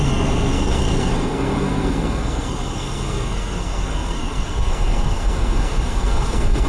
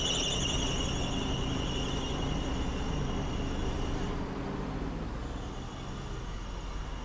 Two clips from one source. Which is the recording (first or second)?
second